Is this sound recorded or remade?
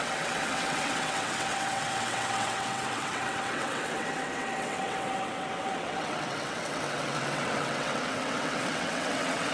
remade